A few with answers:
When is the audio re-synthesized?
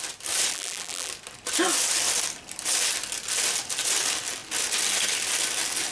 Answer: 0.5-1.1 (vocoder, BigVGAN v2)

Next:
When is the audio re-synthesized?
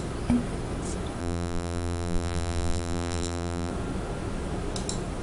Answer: 1.2-3.7 (vocoder, BigVGAN v2)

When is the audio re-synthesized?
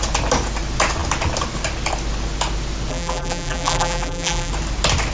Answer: 2.9-4.5 (vocoder, BigVGAN v2)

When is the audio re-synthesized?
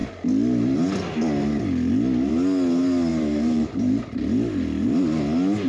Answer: 3.1-4.0 (vocoder, BigVGAN v2)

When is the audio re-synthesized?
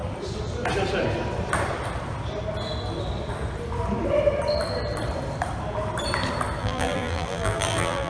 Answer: 6.6-8.1 (vocoder, BigVGAN v2)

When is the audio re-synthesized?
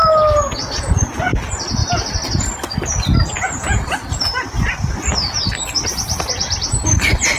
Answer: 1.8-6.2 (vocoder, BigVGAN v2)